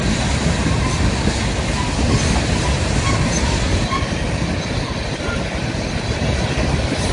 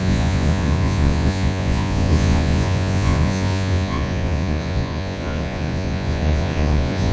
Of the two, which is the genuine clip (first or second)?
first